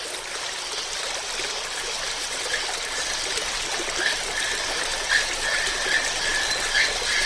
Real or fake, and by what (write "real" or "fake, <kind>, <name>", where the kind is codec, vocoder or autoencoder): real